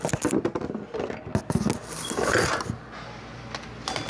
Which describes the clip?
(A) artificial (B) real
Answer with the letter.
B